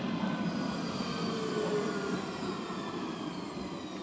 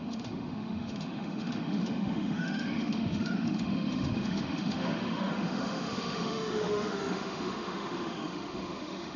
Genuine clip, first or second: first